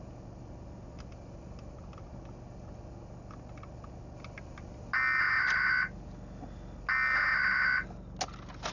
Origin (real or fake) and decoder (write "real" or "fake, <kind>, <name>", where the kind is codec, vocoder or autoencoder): real